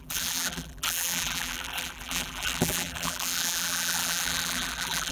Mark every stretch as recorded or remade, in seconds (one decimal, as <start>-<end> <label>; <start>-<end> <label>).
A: 0.0-5.1 remade